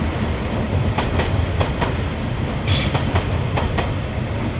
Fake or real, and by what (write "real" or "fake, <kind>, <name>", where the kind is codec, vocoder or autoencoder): real